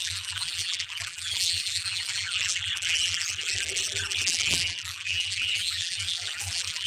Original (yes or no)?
no